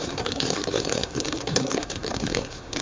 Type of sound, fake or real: fake